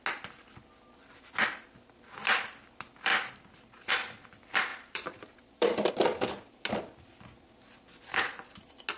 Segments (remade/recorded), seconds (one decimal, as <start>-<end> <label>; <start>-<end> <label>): 0.0-4.7 recorded; 4.7-5.9 remade; 5.9-9.0 recorded